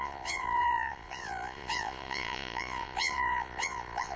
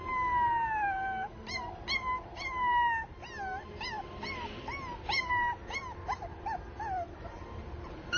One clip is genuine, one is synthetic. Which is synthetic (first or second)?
first